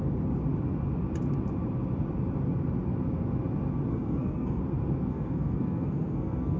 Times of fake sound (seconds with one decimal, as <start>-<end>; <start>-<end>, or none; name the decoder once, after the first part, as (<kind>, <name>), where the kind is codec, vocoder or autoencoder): 3.9-4.6 (codec, SNAC); 5.1-6.6